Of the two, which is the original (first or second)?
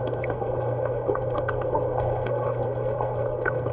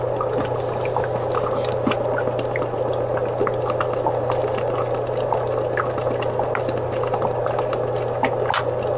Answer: second